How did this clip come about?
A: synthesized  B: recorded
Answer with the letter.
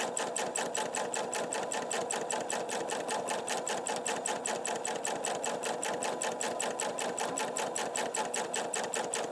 B